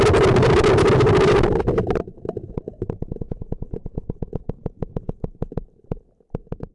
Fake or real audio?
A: real